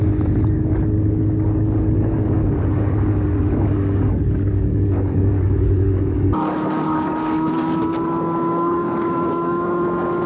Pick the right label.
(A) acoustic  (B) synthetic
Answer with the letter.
B